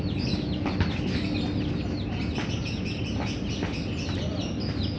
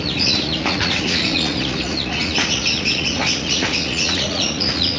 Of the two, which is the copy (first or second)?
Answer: second